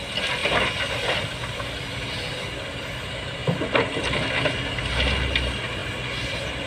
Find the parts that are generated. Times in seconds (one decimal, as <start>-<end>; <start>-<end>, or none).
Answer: none